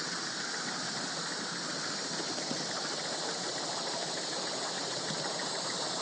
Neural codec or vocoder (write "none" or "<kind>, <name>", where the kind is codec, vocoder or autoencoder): none